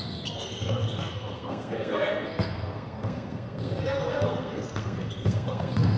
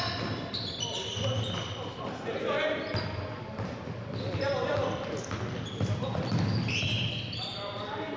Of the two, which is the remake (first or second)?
first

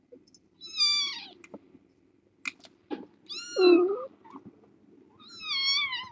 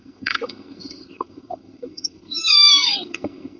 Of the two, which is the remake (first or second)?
second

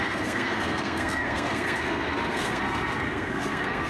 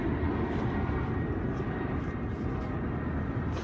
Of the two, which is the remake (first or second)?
first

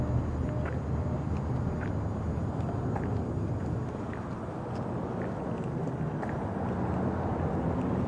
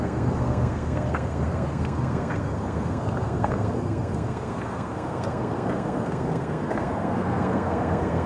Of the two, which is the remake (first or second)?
second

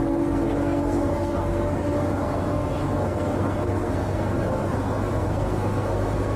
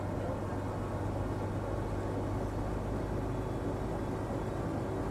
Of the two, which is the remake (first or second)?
first